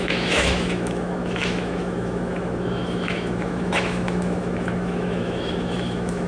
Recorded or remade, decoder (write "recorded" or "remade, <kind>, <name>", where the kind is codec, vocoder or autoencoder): remade, autoencoder, DAC-VAE